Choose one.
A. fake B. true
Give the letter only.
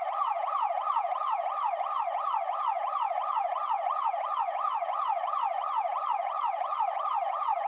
A